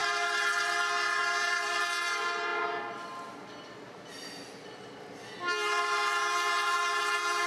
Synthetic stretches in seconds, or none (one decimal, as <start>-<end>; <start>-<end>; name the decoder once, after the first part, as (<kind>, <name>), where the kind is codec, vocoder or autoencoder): none